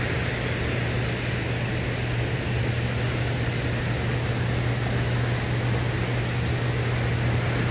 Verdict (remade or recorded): recorded